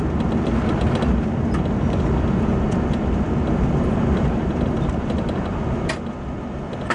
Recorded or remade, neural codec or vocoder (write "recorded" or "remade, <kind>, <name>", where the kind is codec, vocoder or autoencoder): recorded